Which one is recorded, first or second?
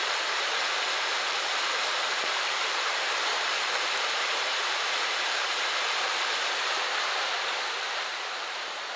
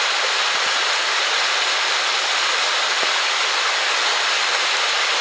second